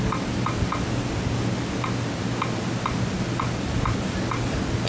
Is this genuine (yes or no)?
yes